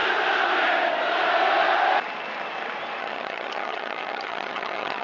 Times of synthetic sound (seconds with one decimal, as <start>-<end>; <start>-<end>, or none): 3.0-5.0

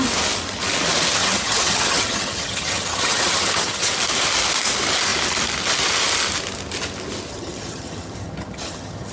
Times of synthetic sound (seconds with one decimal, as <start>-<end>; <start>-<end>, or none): 1.2-3.9; 7.3-9.1

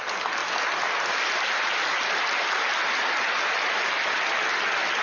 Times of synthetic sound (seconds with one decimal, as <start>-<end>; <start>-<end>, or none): none

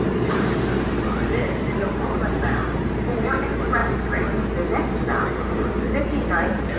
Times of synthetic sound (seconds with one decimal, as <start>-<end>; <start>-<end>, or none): none

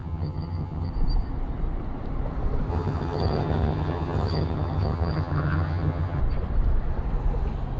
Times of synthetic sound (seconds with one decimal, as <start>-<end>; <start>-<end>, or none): 0.0-0.9; 2.7-6.2

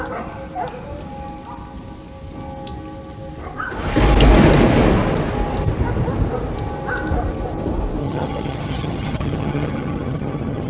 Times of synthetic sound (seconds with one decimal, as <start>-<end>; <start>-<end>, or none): 8.0-10.7